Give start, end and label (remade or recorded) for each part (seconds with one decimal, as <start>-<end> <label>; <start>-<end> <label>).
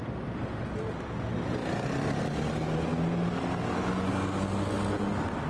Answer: 0.0-5.5 recorded